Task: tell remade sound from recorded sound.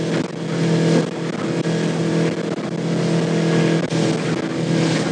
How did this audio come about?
recorded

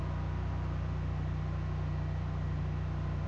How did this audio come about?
recorded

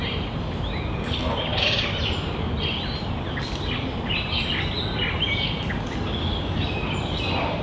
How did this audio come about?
recorded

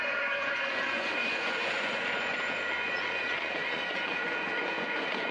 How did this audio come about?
remade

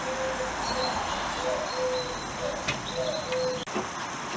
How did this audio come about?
recorded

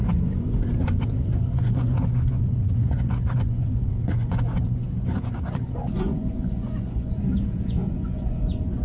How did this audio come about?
remade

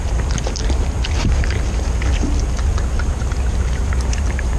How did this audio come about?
recorded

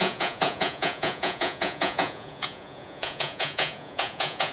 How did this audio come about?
remade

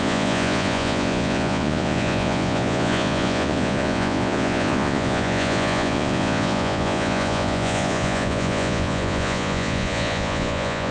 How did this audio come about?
remade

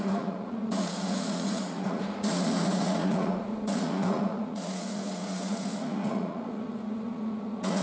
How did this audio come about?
remade